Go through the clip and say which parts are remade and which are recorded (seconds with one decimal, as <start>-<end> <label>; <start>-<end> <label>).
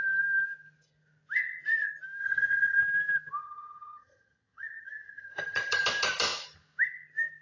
0.0-2.2 recorded; 2.2-2.8 remade; 2.8-3.4 recorded; 3.4-5.8 remade; 5.8-7.4 recorded